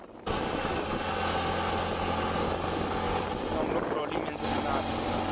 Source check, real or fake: real